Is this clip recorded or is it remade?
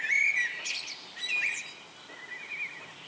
recorded